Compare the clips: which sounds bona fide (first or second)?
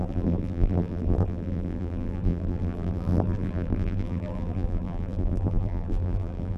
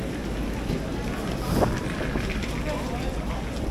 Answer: second